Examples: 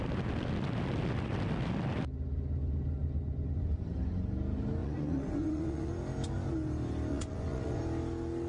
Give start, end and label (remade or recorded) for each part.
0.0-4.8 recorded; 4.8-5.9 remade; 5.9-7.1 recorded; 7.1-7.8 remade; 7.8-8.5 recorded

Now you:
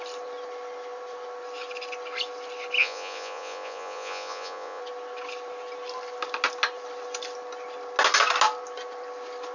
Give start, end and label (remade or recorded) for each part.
0.0-2.8 recorded; 2.8-4.8 remade; 4.8-9.5 recorded

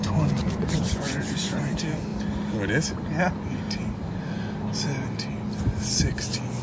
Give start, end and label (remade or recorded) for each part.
0.0-0.4 recorded; 0.4-1.6 remade; 1.6-6.6 recorded

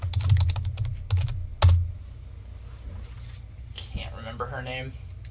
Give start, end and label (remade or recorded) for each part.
0.0-5.3 recorded

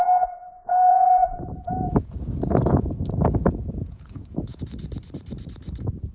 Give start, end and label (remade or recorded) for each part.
0.0-0.9 recorded; 0.9-4.6 remade; 4.6-6.1 recorded

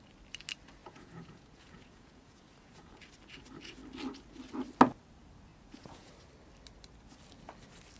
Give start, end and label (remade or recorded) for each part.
0.0-0.8 recorded; 0.8-3.0 remade; 3.0-5.5 recorded; 5.5-6.1 remade; 6.1-8.0 recorded